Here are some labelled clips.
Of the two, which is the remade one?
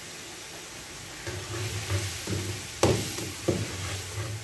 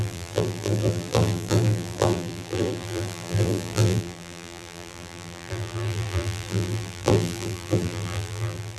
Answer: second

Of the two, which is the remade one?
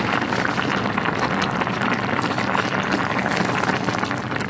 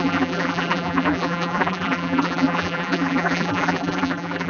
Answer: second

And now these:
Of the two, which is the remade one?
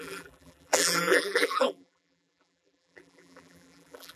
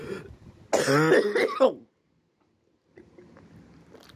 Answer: first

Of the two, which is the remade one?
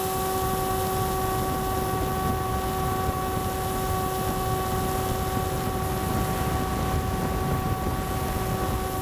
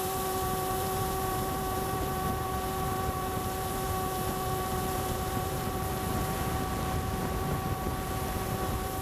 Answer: second